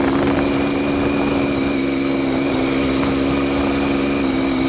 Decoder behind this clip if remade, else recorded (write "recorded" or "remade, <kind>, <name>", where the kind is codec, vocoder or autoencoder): recorded